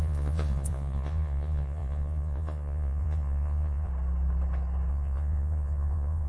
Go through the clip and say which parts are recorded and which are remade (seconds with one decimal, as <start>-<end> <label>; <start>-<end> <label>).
0.0-3.9 remade; 3.9-4.9 recorded; 4.9-6.3 remade